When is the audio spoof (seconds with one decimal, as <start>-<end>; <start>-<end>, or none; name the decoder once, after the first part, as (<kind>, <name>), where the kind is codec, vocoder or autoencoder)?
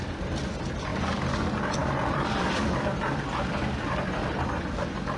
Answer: 0.9-1.4 (vocoder, BigVGAN v2); 1.8-4.8